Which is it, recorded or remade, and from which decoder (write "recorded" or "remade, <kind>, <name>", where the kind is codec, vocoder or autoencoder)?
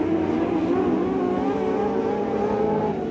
recorded